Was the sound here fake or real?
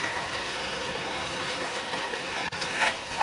fake